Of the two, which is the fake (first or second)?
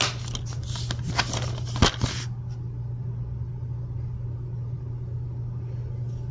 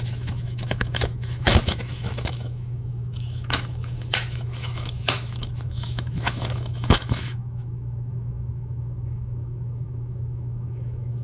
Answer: second